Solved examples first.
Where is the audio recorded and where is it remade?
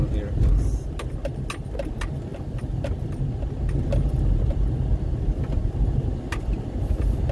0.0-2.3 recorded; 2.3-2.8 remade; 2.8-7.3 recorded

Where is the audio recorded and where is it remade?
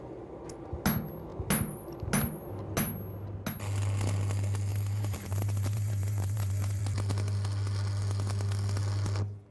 0.0-4.7 recorded; 4.7-6.8 remade; 6.8-9.5 recorded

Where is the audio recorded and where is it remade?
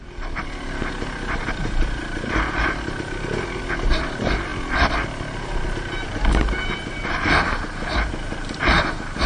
0.0-9.3 recorded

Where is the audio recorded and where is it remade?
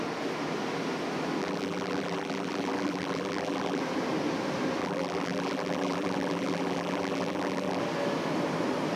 0.0-1.4 recorded; 1.4-3.8 remade; 3.8-4.8 recorded; 4.8-7.8 remade; 7.8-9.0 recorded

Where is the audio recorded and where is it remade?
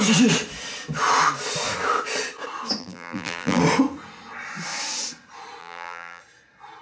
0.0-2.8 recorded; 2.8-3.6 remade; 3.6-5.6 recorded; 5.6-6.2 remade; 6.2-6.8 recorded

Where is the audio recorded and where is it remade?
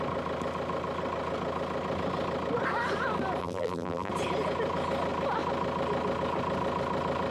0.0-3.4 recorded; 3.4-4.1 remade; 4.1-7.3 recorded